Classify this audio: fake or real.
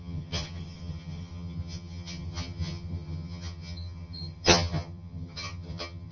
fake